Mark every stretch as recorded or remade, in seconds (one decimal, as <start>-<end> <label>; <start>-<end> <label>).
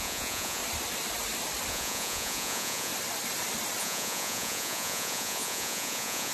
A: 0.0-0.6 remade; 0.6-1.7 recorded; 1.7-2.9 remade; 2.9-3.8 recorded; 3.8-6.3 remade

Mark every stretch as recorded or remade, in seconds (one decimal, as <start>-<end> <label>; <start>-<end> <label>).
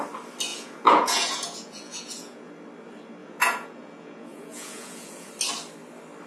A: 0.0-0.5 recorded; 0.5-2.5 remade; 2.5-3.2 recorded; 3.2-5.3 remade; 5.3-6.3 recorded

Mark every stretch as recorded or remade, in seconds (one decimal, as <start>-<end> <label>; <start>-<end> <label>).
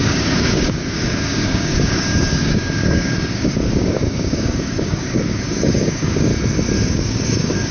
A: 0.0-6.3 remade; 6.3-6.9 recorded; 6.9-7.7 remade